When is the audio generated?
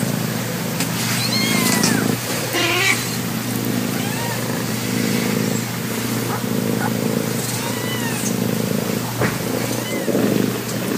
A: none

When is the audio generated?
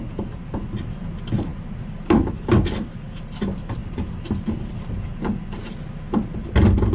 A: none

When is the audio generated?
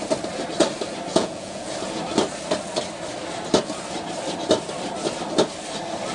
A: 1.1-1.7 (vocoder, Vocos)